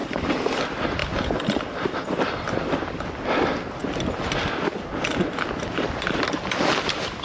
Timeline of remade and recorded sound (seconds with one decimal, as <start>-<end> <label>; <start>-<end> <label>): 0.0-0.6 remade; 0.6-1.0 recorded; 1.0-2.5 remade; 2.5-7.2 recorded